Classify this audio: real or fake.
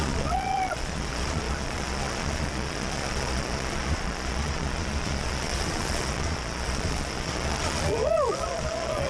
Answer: fake